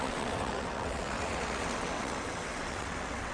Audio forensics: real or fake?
fake